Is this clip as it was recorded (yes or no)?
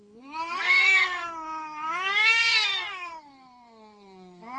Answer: no